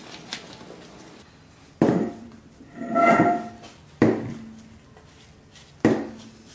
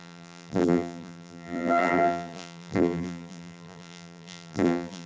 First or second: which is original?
first